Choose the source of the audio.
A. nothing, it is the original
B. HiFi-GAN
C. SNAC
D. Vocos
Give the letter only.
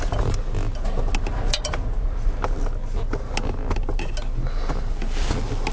A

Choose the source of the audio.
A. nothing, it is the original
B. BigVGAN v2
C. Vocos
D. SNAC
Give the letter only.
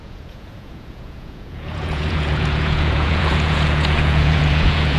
C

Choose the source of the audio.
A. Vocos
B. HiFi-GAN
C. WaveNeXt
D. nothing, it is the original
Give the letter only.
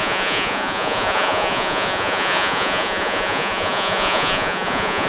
A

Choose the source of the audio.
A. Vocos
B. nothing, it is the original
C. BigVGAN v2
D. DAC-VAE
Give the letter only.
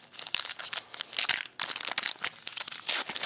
B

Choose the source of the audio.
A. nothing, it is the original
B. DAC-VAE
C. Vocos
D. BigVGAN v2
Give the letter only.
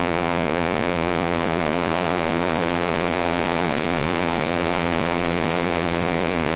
C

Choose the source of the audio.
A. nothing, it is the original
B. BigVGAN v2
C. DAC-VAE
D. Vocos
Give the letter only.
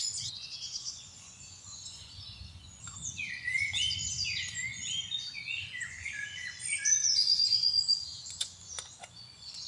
D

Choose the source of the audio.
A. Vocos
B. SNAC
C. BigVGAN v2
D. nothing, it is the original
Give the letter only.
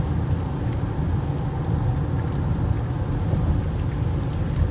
D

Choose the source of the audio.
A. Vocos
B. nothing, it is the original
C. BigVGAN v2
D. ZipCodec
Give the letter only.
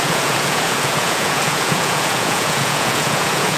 A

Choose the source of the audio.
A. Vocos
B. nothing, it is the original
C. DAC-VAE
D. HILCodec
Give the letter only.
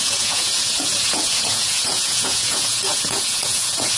A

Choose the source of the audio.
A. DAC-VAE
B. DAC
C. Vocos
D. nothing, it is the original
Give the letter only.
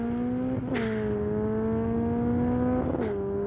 D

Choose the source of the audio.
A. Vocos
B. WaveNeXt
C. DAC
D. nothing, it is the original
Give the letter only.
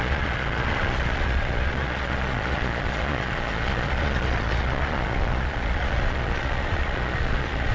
A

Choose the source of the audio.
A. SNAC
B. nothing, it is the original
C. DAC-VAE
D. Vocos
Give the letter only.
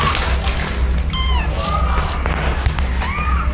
B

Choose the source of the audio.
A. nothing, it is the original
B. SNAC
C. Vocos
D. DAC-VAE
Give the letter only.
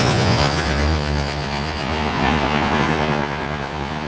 C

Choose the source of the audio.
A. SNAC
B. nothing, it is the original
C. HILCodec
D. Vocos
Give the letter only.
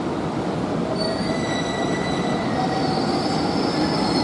B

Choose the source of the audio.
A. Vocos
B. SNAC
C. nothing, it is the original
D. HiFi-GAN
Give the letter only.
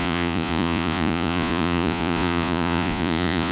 A